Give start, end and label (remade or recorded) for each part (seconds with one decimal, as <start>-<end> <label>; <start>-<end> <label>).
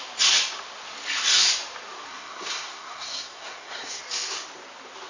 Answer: 0.0-2.1 recorded; 2.1-4.0 remade; 4.0-5.1 recorded